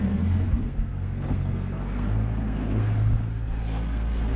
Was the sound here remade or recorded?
remade